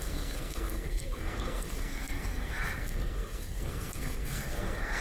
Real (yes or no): no